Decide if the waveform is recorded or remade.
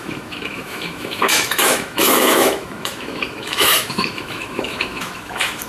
remade